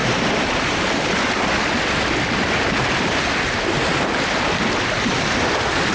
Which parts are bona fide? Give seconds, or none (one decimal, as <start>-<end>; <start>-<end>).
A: 0.0-5.9